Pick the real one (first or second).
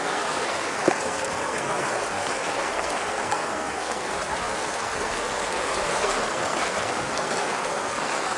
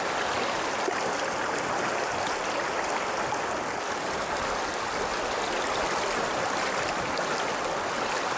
second